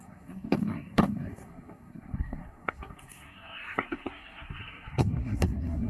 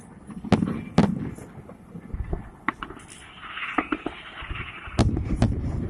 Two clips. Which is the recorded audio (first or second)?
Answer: second